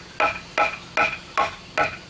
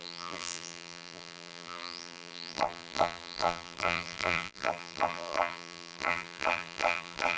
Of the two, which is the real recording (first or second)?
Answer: first